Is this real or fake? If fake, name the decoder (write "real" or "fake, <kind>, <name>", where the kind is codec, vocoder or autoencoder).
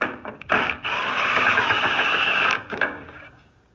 fake, codec, DAC